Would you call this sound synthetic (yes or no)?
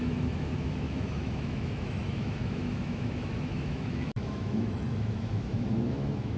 yes